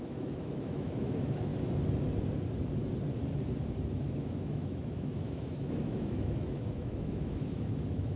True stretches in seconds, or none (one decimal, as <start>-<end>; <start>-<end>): 1.5-3.9